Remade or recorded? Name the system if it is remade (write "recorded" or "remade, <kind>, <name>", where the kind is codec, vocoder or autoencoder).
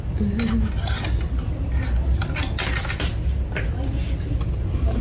recorded